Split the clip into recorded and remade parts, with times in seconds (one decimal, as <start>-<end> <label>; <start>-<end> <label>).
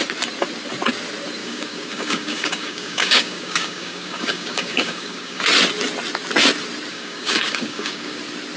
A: 0.0-1.4 recorded; 1.4-5.4 remade; 5.4-6.9 recorded; 6.9-8.2 remade; 8.2-8.6 recorded